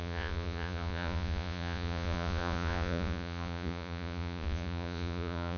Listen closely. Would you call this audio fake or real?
fake